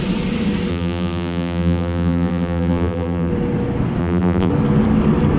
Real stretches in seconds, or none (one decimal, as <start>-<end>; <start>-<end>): 0.0-0.7; 3.3-4.0; 4.5-5.4

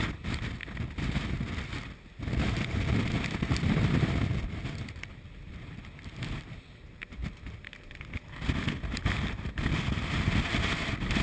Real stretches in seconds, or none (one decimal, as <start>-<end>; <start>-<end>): 0.0-11.2

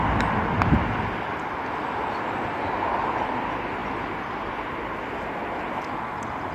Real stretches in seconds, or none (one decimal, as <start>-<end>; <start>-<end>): 0.0-3.8; 5.5-6.5

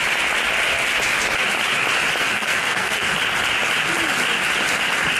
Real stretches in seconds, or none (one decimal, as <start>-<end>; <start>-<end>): 0.0-2.2; 3.1-5.2

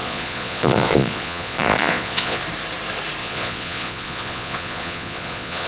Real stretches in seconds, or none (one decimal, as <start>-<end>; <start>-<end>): 2.4-3.2

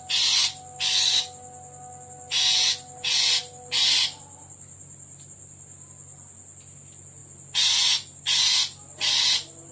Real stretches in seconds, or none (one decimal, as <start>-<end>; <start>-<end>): 0.0-9.7